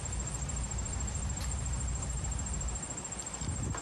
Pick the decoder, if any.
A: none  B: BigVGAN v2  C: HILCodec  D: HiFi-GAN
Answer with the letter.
A